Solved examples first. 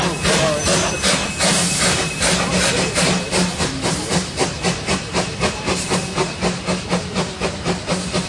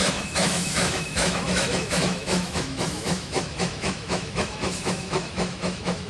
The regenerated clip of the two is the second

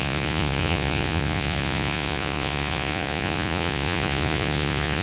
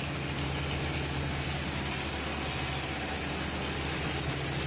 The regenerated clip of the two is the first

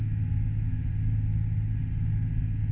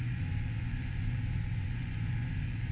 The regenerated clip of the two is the second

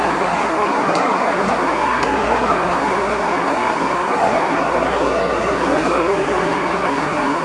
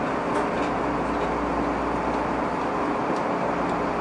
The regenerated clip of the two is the first